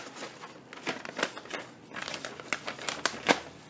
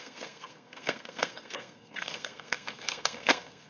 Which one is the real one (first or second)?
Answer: first